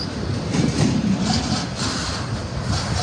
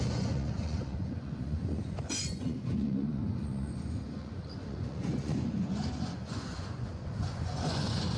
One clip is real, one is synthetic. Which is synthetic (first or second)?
second